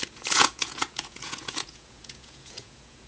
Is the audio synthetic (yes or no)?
yes